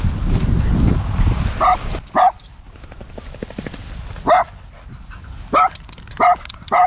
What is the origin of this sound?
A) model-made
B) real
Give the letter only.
B